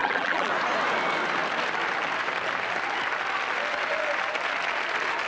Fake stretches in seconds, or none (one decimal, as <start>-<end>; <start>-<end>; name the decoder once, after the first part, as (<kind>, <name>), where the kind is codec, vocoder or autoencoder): 0.0-0.5 (vocoder, BigVGAN v2)